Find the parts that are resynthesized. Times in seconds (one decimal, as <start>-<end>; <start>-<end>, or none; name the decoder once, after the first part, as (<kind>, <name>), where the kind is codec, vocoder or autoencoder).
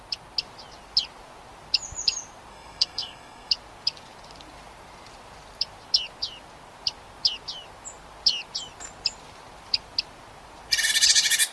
2.5-3.5 (codec, SNAC)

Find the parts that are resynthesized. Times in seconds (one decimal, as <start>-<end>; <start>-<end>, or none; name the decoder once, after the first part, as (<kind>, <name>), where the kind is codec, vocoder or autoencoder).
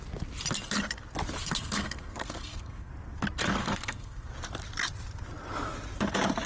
1.4-2.9 (codec, SNAC); 3.6-4.3